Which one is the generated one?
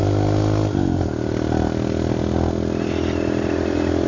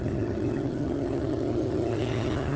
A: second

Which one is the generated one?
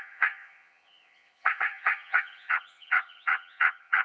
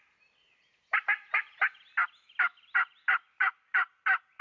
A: first